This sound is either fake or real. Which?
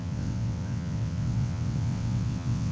fake